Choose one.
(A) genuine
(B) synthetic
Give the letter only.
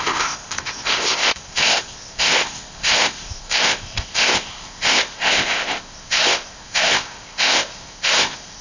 B